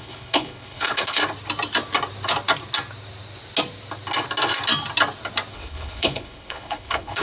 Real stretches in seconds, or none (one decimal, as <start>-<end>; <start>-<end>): 1.2-5.5